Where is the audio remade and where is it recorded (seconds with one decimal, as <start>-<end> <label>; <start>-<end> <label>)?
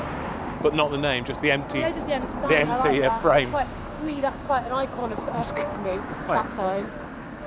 0.0-2.6 recorded; 2.6-4.5 remade; 4.5-5.0 recorded; 5.0-6.9 remade; 6.9-7.5 recorded